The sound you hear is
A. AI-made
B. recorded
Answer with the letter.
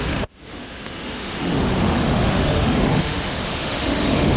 A